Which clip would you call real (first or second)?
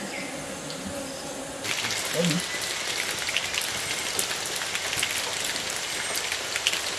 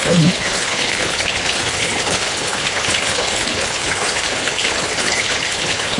first